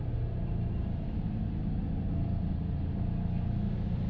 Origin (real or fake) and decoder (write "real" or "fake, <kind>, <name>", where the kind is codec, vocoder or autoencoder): real